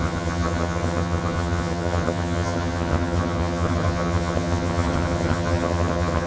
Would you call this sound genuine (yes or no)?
no